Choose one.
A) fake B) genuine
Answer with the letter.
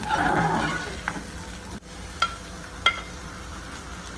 B